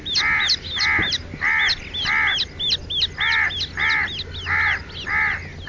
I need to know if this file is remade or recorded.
recorded